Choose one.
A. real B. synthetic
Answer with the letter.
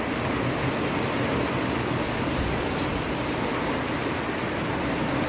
A